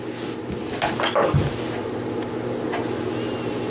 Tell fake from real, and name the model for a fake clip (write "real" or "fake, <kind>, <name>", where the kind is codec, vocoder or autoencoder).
real